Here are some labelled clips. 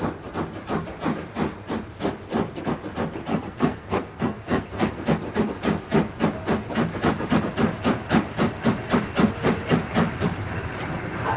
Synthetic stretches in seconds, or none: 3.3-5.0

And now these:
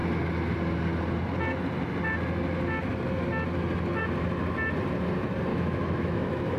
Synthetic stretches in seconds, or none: 5.5-6.6

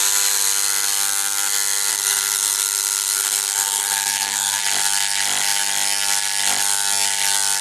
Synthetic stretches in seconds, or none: 1.9-4.6

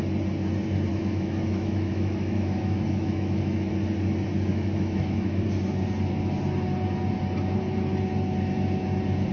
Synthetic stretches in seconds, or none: 0.9-3.7; 4.5-5.4

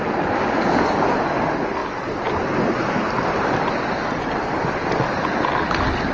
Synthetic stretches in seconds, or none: none

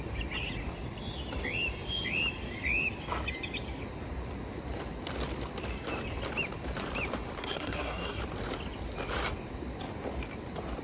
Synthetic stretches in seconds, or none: 7.4-8.2

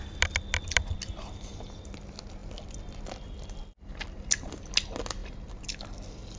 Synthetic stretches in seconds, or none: none